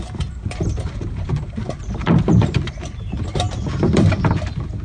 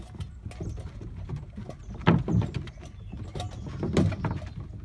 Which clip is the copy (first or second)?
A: first